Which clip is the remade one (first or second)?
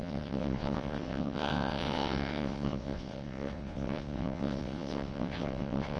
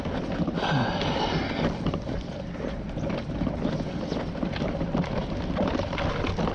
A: first